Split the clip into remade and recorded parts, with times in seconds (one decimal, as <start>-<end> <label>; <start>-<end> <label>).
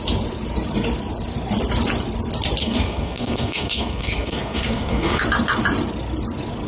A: 0.0-2.6 recorded; 2.6-5.2 remade; 5.2-6.7 recorded